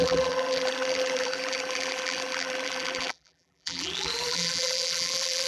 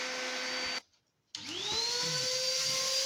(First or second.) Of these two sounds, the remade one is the first